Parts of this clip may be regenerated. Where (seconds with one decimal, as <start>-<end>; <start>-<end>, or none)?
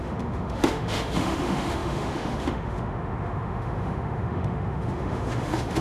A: 0.0-5.8